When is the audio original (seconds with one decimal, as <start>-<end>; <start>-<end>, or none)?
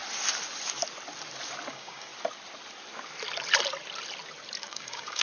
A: 0.0-1.7; 2.1-4.6